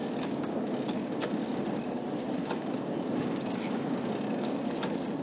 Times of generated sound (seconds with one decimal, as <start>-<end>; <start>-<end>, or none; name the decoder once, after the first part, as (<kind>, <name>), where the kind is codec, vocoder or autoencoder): 0.0-1.6 (codec, DAC); 2.4-4.8